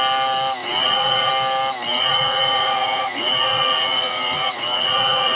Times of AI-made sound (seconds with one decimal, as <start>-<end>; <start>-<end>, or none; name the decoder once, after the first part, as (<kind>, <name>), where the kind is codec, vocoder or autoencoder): 0.6-1.3 (vocoder, Vocos); 1.9-5.4

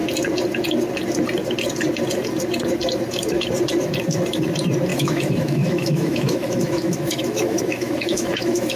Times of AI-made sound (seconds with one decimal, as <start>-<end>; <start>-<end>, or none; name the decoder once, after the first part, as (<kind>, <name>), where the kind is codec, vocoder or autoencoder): 4.9-8.8 (autoencoder, DAC-VAE)

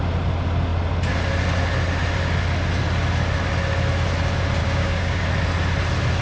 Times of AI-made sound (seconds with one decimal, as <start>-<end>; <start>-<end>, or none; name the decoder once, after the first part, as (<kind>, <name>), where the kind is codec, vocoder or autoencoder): 4.6-5.2 (codec, DAC)